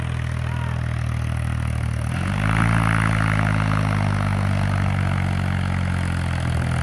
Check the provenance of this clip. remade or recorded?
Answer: recorded